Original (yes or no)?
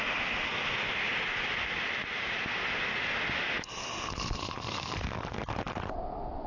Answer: yes